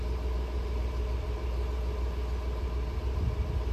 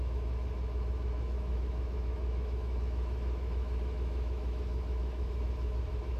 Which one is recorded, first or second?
first